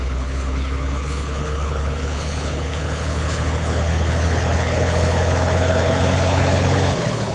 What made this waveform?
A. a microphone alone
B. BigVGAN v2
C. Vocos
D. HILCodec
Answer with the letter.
D